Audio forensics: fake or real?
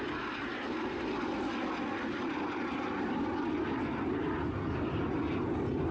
real